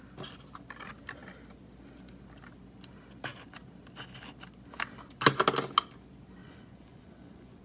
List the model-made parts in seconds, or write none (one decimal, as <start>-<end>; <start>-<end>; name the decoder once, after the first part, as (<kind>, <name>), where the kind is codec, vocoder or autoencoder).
6.4-7.6 (vocoder, Vocos)